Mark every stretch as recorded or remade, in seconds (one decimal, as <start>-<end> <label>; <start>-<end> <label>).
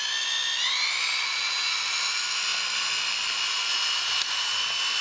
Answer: 0.0-5.0 recorded